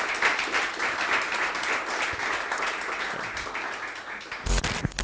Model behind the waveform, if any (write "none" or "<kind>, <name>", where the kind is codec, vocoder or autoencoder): none